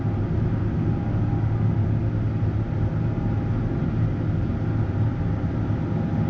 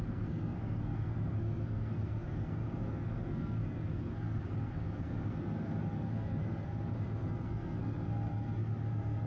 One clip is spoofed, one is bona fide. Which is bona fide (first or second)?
first